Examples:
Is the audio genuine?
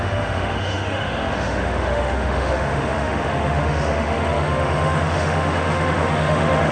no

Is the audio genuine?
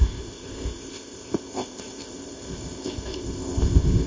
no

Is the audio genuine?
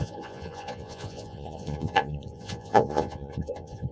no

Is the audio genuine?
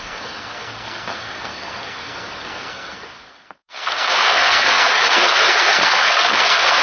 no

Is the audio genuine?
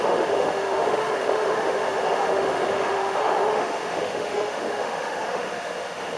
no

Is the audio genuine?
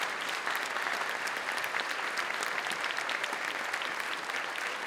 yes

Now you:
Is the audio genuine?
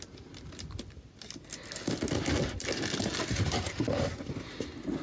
yes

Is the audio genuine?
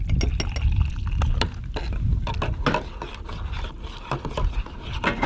yes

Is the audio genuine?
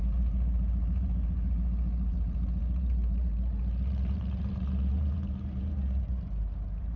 no